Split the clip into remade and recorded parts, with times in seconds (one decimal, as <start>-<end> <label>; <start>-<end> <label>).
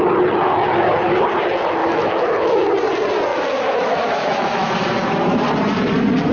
0.0-1.8 recorded; 1.8-2.7 remade; 2.7-3.3 recorded; 3.3-4.7 remade; 4.7-6.3 recorded